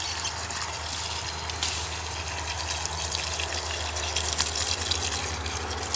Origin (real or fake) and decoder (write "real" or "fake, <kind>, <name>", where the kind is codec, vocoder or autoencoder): real